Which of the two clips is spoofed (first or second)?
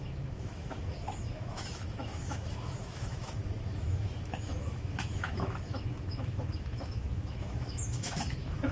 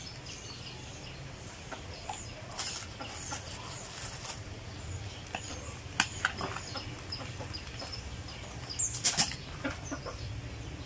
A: first